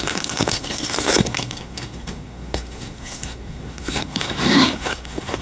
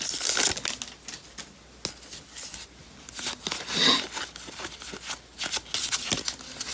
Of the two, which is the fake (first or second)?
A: first